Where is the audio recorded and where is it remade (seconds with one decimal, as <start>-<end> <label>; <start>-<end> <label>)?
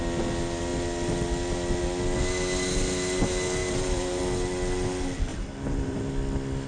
0.0-3.6 recorded; 3.6-4.2 remade; 4.2-5.3 recorded; 5.3-6.1 remade; 6.1-6.7 recorded